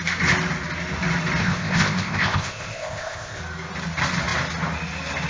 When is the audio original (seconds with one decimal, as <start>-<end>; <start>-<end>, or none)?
0.0-1.4; 3.4-5.3